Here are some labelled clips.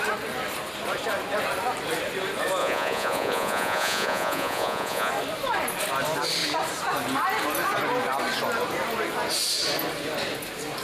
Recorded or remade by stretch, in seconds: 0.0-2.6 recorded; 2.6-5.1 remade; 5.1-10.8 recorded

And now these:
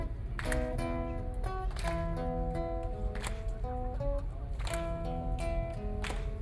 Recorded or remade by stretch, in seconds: 0.0-6.4 recorded

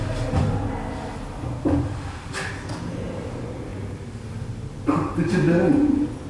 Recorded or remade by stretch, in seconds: 0.0-6.3 recorded